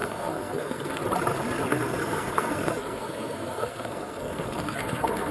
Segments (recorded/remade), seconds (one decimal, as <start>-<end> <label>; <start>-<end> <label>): 0.0-1.0 remade; 1.0-1.7 recorded; 1.7-5.3 remade